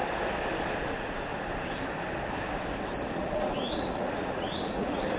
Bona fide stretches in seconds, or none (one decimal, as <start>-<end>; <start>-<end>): 0.0-0.8; 1.3-3.1